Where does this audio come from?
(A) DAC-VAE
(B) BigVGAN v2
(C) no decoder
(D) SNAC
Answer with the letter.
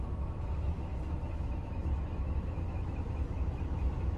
A